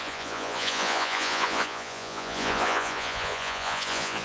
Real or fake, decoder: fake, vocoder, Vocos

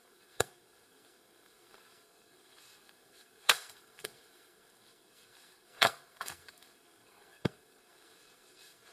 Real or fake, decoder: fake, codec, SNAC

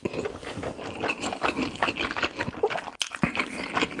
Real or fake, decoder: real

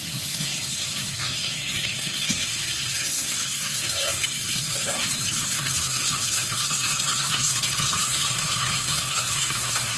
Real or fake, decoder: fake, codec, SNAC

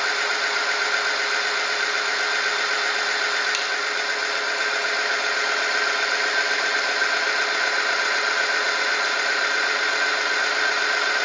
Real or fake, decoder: real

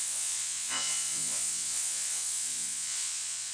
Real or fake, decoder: fake, vocoder, Vocos